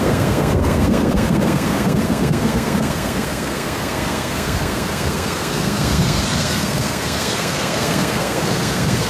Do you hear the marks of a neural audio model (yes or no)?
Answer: yes